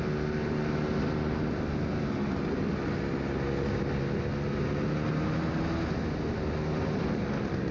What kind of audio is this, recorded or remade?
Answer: recorded